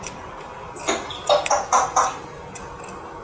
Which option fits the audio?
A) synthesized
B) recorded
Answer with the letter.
B